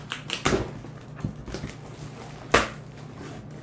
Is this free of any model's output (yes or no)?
yes